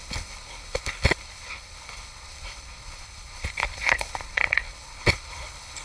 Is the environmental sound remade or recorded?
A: remade